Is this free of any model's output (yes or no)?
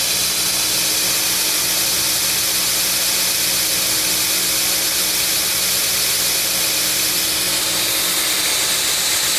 yes